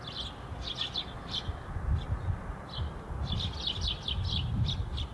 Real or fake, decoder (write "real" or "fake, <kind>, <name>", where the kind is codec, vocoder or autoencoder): real